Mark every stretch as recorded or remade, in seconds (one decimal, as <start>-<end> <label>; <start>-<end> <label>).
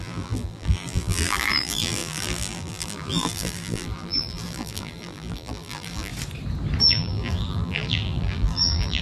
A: 0.0-6.1 remade; 6.1-6.8 recorded; 6.8-9.0 remade